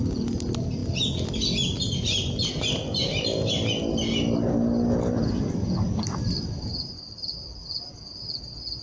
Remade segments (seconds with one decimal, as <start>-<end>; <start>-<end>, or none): none